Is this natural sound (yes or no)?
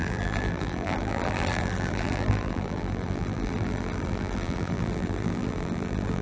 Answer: no